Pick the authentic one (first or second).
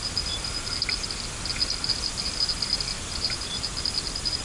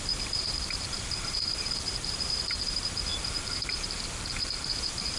first